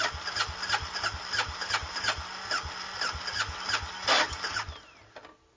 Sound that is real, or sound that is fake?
real